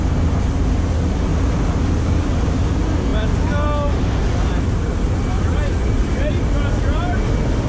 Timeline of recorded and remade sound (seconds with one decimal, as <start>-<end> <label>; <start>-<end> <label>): 0.0-7.7 recorded